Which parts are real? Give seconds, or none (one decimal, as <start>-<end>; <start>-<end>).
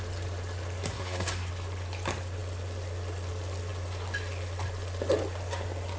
0.0-0.9; 1.5-6.0